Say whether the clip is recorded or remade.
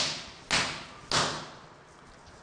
recorded